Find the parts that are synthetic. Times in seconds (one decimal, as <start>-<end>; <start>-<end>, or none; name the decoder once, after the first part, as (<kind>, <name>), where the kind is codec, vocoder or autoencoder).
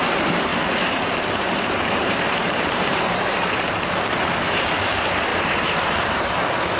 0.5-4.6 (vocoder, BigVGAN v2); 5.3-6.3